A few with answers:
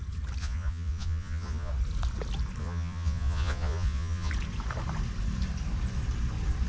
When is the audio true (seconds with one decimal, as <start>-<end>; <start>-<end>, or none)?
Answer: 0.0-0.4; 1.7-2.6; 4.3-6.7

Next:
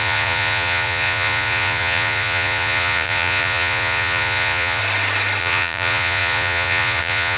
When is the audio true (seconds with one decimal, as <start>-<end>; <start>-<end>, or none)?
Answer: 4.8-5.4

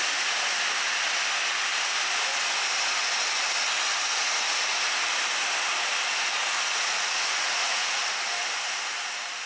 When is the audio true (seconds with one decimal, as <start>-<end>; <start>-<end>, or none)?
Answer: 0.0-6.7; 8.0-9.5

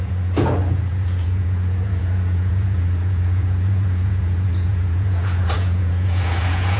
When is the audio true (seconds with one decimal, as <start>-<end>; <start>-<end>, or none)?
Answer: none

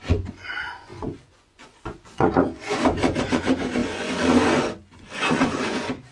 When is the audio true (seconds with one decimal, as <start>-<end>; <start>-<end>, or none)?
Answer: none

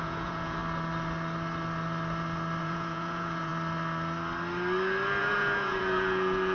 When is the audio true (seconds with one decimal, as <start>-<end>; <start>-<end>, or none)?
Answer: 0.6-2.6; 3.5-5.2

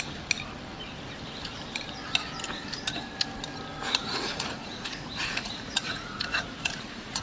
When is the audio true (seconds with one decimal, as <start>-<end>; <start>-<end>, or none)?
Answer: 0.0-4.0

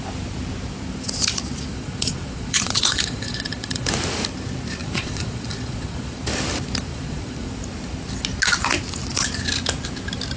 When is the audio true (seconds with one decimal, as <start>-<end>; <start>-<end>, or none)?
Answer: 0.0-1.7; 3.9-4.8; 6.2-6.9; 7.5-10.4